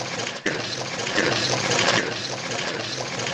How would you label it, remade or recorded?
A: remade